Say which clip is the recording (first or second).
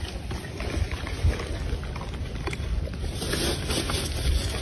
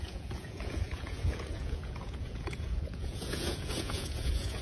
first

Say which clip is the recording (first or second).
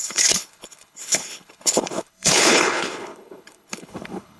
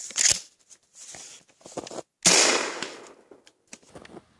second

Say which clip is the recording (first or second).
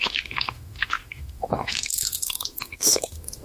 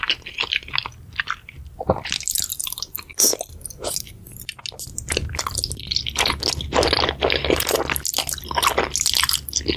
second